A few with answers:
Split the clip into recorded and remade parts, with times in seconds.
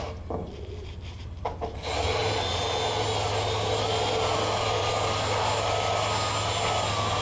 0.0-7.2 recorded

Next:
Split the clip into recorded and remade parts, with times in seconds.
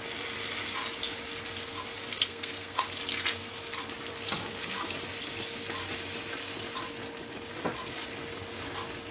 0.0-2.1 recorded; 2.1-2.8 remade; 2.8-9.1 recorded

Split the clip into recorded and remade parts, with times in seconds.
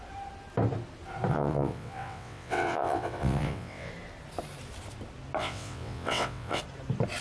0.0-1.3 recorded; 1.3-3.9 remade; 3.9-5.4 recorded; 5.4-6.6 remade; 6.6-7.2 recorded